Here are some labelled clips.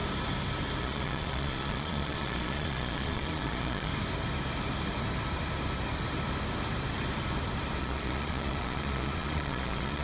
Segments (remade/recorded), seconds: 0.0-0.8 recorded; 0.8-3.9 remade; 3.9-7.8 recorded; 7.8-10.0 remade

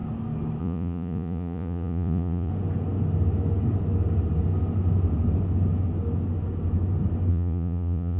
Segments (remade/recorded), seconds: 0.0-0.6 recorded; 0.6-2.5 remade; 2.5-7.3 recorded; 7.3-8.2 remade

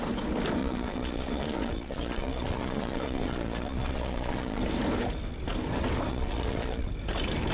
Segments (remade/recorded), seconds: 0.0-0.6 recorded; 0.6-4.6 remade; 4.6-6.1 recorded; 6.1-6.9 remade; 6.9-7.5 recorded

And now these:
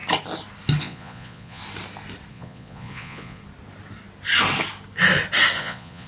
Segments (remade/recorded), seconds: 0.0-0.8 recorded; 0.8-1.6 remade; 1.6-2.3 recorded; 2.3-3.4 remade; 3.4-5.6 recorded; 5.6-6.1 remade